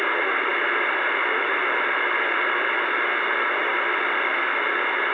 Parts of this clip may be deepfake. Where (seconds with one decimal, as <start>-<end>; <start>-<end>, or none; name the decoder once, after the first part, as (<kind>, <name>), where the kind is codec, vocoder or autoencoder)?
none